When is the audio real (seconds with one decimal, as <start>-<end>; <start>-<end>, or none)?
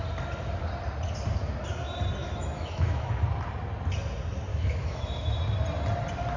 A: 0.0-2.2; 3.1-4.5; 5.4-6.4